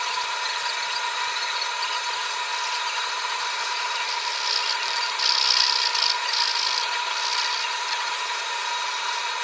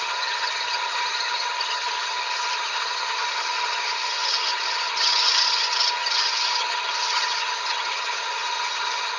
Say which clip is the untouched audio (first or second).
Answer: first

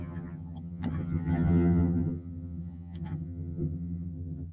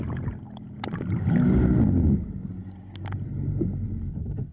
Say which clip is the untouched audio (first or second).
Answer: second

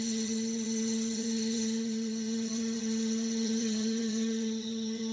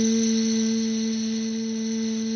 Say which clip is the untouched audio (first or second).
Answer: second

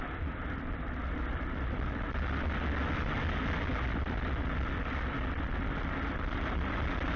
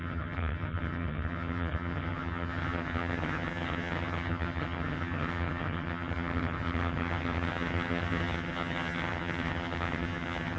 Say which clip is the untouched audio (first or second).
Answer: first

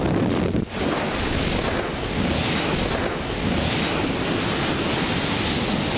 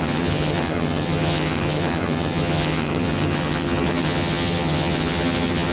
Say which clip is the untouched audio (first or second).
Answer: first